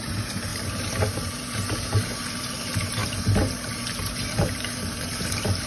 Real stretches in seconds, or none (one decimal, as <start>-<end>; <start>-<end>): 3.0-4.0